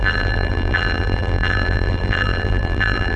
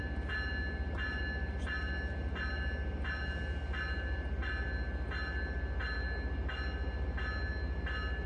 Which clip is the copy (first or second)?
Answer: first